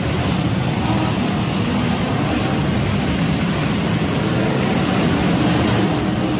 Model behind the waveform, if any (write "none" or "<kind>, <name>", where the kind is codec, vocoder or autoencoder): none